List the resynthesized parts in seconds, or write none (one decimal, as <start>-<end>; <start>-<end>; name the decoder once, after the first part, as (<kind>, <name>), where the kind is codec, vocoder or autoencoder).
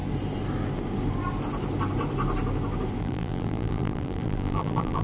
3.0-5.0 (vocoder, BigVGAN v2)